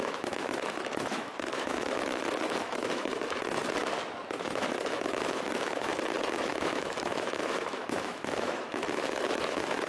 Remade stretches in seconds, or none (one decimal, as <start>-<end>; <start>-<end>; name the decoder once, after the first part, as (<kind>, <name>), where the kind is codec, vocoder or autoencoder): 0.0-3.1 (autoencoder, DAC-VAE); 4.3-5.9; 6.4-9.9